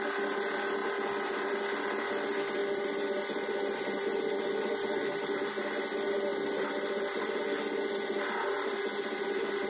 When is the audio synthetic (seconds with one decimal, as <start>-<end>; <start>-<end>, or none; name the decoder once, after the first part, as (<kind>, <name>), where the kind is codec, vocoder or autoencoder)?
2.6-5.5 (vocoder, BigVGAN v2); 6.3-7.4